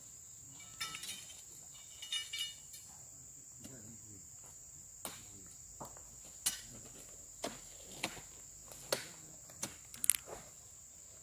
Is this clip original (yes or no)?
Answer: yes